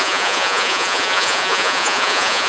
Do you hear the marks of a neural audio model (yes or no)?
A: yes